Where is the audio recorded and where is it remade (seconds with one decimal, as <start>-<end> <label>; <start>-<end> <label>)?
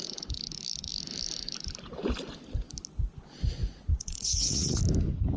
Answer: 0.0-3.6 recorded; 3.6-4.8 remade; 4.8-5.4 recorded